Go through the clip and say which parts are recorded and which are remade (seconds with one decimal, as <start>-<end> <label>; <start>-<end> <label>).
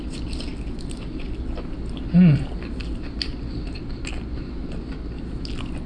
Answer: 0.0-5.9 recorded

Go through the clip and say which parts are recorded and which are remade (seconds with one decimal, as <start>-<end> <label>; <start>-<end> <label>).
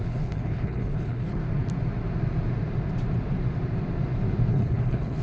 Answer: 0.0-1.4 remade; 1.4-4.5 recorded; 4.5-5.2 remade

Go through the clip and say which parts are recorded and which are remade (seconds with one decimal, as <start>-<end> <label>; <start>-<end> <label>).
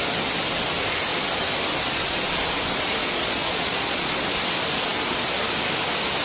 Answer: 0.0-3.0 recorded; 3.0-4.1 remade; 4.1-6.2 recorded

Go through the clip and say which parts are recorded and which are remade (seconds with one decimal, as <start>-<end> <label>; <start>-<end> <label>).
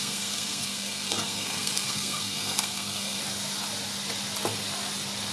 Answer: 0.0-3.2 remade; 3.2-5.3 recorded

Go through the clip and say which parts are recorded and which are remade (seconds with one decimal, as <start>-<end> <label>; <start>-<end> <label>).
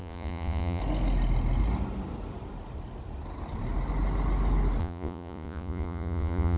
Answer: 0.0-0.8 remade; 0.8-4.8 recorded; 4.8-6.6 remade